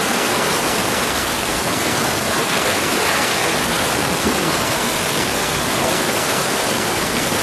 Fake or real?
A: fake